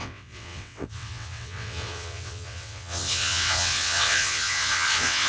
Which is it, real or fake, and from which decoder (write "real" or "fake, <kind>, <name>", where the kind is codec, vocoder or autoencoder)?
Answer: fake, vocoder, WaveNeXt